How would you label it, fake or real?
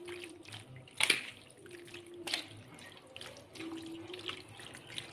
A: real